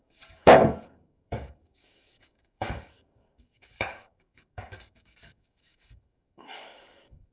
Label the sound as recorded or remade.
remade